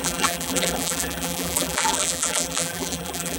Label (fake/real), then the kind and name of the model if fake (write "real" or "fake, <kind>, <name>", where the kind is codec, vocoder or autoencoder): fake, vocoder, BigVGAN v2